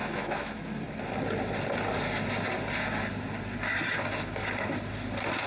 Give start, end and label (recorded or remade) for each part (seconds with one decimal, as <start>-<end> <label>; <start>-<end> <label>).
0.0-0.6 remade; 0.6-5.5 recorded